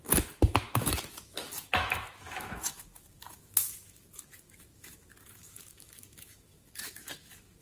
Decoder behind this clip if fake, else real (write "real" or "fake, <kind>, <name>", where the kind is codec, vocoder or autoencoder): fake, autoencoder, DAC-VAE